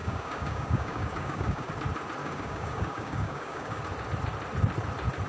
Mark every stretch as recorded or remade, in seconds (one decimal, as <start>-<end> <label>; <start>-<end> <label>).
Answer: 0.0-1.7 remade; 1.7-2.2 recorded; 2.2-3.8 remade; 3.8-5.3 recorded